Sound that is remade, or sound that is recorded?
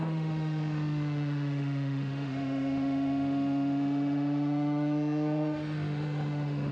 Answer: remade